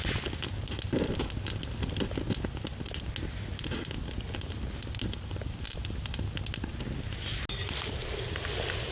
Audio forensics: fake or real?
real